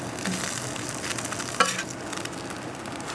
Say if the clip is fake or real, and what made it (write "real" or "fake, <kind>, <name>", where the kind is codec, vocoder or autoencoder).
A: real